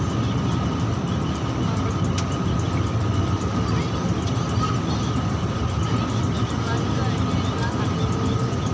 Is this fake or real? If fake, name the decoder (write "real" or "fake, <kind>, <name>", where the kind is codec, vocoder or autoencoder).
real